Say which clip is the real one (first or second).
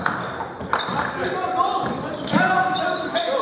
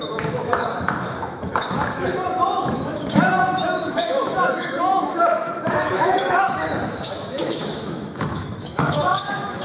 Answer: first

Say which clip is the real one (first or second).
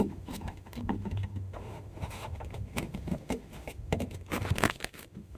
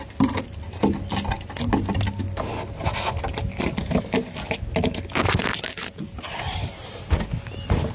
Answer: second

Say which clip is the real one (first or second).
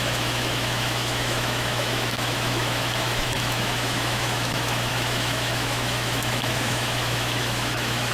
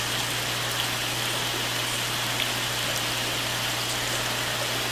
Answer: second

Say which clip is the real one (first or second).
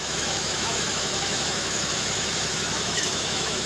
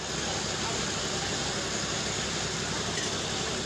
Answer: second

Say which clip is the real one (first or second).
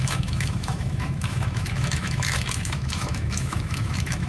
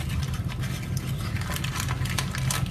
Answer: second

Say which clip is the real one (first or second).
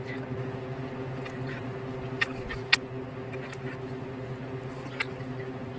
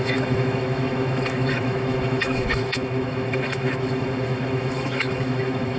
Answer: first